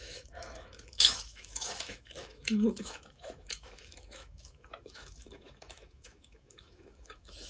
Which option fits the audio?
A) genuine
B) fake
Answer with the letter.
B